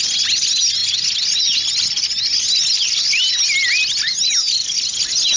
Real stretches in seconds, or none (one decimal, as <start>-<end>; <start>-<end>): 0.0-5.4